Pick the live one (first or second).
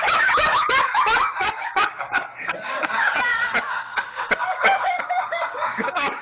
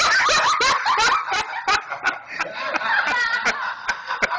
second